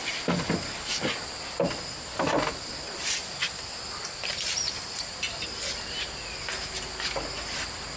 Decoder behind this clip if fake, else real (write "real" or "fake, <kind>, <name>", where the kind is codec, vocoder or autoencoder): real